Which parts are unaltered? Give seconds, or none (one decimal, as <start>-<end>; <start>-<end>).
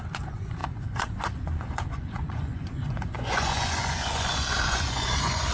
none